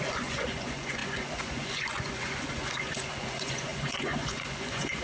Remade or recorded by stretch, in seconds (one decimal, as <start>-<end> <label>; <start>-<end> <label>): 0.0-5.0 remade